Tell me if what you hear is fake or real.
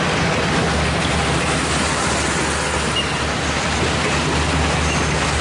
real